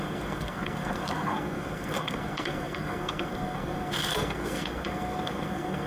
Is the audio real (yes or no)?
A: no